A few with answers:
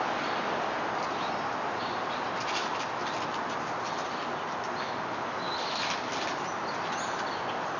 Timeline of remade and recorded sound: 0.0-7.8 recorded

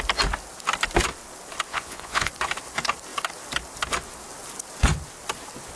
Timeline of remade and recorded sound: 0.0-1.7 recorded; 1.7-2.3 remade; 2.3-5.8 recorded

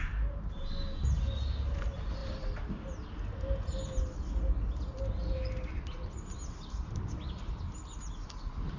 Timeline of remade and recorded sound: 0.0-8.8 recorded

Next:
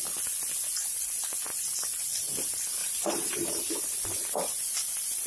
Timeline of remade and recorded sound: 0.0-2.8 recorded; 2.8-3.6 remade; 3.6-5.3 recorded

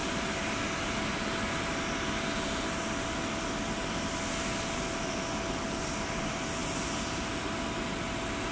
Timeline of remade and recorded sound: 0.0-8.5 recorded

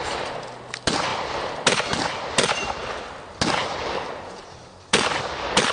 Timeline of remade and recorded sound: 0.0-5.7 recorded

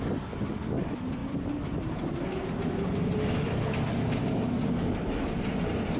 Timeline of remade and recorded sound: 0.0-6.0 recorded